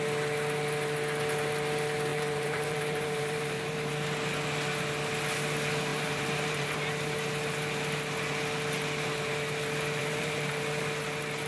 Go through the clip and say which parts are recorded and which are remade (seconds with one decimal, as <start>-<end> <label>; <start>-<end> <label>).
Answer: 0.0-2.1 recorded; 2.1-3.9 remade; 3.9-5.9 recorded; 5.9-6.9 remade; 6.9-10.0 recorded; 10.0-10.5 remade; 10.5-11.5 recorded